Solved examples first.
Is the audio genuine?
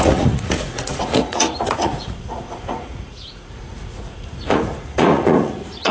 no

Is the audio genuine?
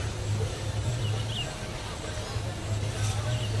yes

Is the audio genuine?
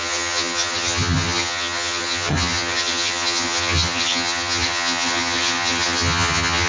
no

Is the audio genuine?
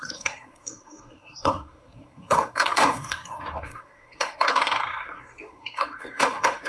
no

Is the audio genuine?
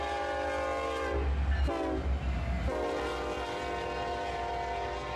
yes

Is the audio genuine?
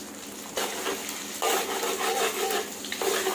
yes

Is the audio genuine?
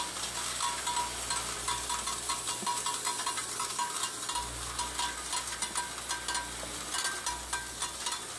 yes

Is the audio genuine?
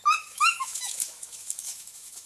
no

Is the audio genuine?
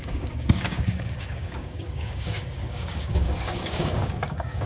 no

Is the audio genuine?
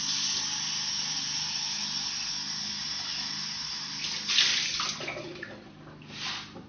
yes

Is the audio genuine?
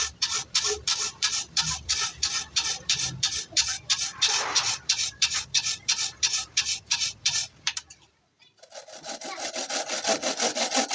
no